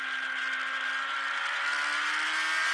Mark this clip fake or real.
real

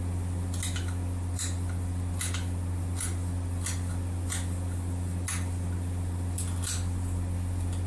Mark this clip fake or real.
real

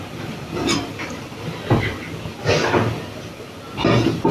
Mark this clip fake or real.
real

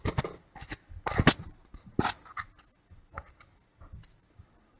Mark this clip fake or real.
real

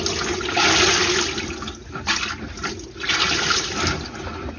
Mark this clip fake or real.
real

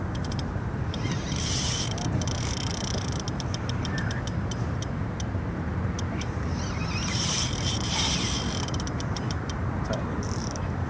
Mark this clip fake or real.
fake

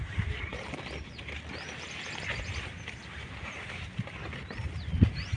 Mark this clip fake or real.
fake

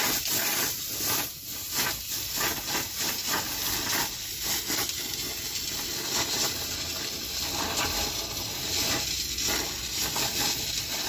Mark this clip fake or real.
real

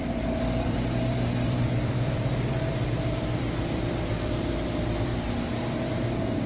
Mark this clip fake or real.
fake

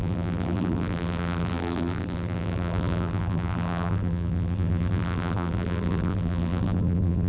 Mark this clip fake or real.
fake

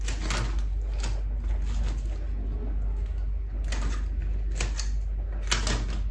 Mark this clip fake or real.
real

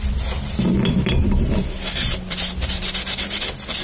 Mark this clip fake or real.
fake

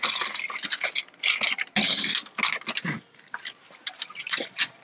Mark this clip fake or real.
real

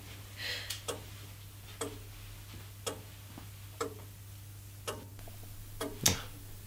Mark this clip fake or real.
real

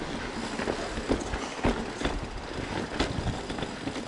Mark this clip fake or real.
real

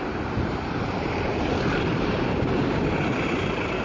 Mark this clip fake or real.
fake